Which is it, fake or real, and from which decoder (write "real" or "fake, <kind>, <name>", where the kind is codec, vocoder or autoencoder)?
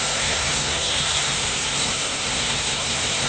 fake, codec, SNAC